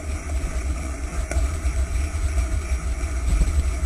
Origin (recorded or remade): remade